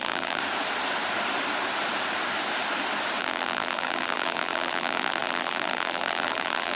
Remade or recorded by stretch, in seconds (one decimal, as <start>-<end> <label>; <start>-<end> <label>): 0.0-0.4 remade; 0.4-3.2 recorded; 3.2-6.7 remade